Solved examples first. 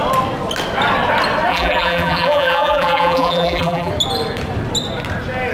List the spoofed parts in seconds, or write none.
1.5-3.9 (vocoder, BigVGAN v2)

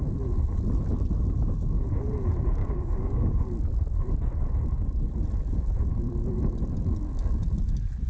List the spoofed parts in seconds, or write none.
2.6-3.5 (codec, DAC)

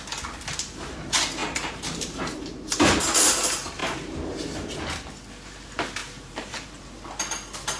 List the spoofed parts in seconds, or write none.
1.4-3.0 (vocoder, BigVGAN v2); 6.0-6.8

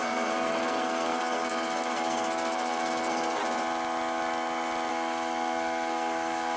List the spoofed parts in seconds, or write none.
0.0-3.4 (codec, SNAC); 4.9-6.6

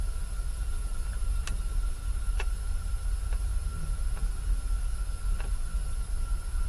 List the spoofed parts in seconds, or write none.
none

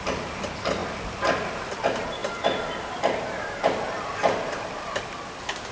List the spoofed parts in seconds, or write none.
0.8-1.8 (vocoder, BigVGAN v2)

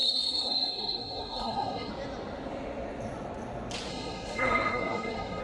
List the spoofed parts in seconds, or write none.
0.0-1.9 (codec, SNAC); 3.9-5.4

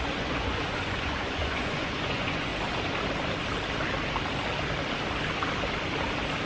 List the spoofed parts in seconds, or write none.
0.0-2.5 (vocoder, Vocos)